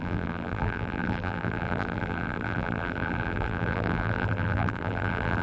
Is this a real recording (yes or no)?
no